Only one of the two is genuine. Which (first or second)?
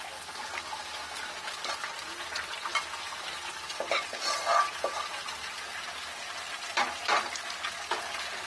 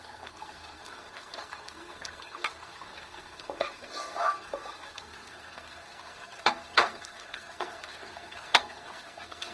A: first